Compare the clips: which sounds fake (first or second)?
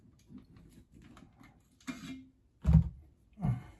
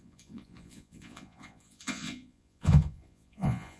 second